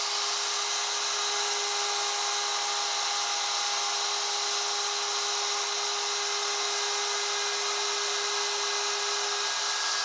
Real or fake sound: real